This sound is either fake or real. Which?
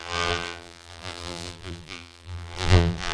fake